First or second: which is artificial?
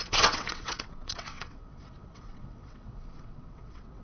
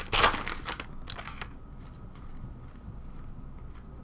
first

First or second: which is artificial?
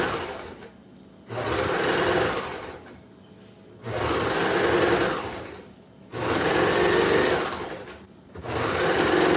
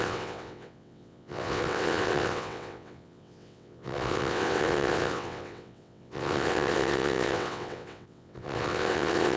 second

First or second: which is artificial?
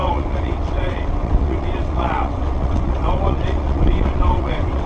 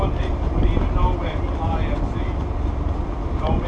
first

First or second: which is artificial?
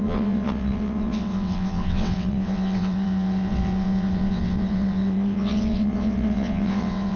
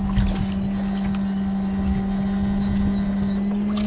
first